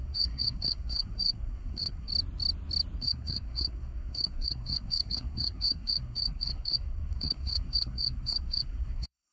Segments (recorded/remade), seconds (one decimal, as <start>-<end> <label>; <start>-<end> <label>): 0.0-2.1 remade; 2.1-3.0 recorded; 3.0-9.3 remade